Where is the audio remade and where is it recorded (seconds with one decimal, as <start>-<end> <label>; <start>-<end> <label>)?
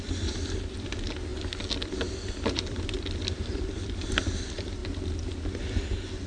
0.0-1.3 remade; 1.3-2.5 recorded; 2.5-4.8 remade; 4.8-6.3 recorded